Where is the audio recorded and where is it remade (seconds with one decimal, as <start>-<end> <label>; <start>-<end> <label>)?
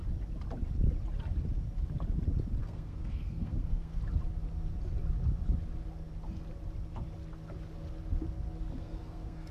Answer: 0.0-2.6 recorded; 2.6-4.0 remade; 4.0-8.8 recorded; 8.8-9.5 remade